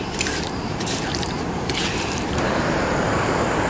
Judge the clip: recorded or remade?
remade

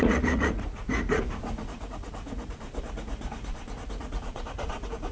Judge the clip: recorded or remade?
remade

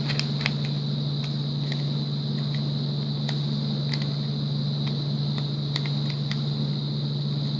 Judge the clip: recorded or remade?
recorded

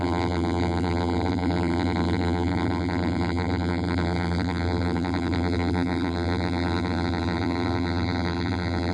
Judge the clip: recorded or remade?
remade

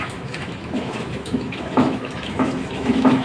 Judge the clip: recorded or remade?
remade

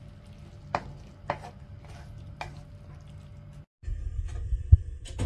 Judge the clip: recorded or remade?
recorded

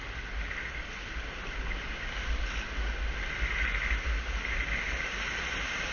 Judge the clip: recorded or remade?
recorded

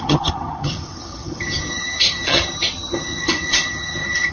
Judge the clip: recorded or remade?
remade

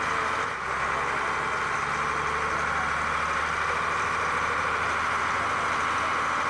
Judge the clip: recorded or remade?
recorded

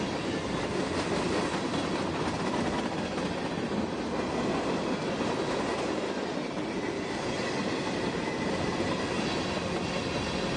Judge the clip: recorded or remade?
recorded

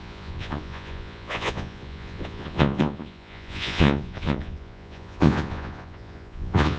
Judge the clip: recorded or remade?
remade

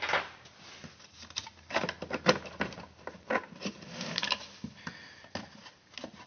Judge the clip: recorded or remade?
recorded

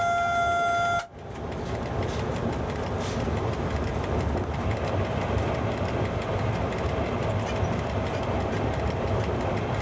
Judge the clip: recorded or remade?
recorded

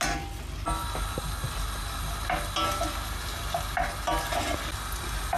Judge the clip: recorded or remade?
recorded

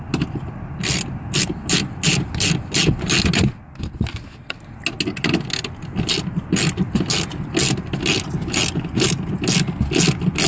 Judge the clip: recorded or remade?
recorded